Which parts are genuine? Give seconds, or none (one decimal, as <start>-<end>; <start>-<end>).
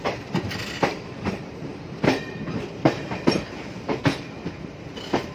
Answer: none